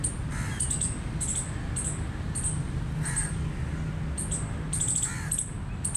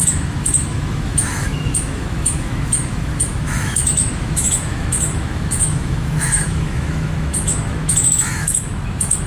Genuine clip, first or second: first